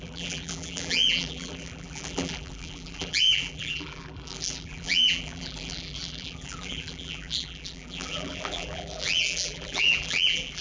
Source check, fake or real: fake